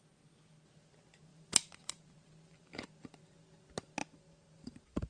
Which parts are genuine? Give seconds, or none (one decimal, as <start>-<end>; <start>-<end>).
0.0-1.3; 2.9-4.0